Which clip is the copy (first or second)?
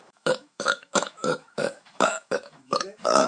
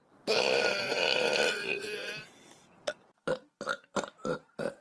first